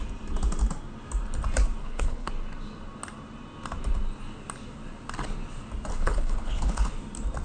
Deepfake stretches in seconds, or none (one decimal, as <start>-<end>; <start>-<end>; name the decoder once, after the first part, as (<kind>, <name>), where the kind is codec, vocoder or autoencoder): 1.8-2.3 (codec, HILCodec); 5.9-6.9